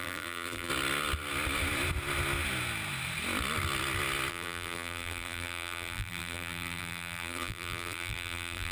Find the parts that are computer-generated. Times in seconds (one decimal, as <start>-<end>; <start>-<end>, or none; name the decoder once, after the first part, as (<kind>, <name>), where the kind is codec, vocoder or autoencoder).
0.0-0.7 (vocoder, BigVGAN v2); 4.3-8.7